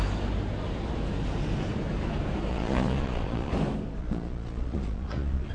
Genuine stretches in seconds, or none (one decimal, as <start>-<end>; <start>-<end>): 0.0-2.5; 3.5-4.0

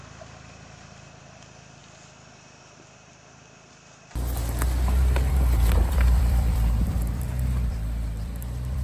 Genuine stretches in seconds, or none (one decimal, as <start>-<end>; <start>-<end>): 1.8-5.3

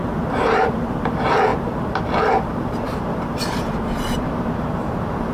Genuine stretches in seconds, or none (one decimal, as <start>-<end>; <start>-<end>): none

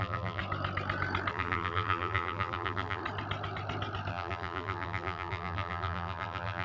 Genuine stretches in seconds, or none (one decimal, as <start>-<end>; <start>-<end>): 0.4-1.3; 3.0-4.1